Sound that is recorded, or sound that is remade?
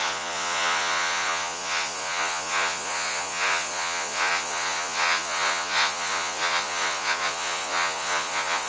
remade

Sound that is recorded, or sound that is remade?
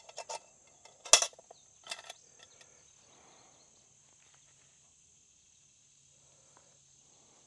recorded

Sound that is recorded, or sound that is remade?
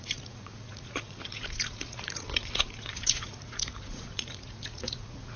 remade